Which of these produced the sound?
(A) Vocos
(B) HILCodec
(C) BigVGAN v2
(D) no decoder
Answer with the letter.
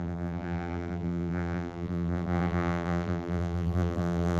C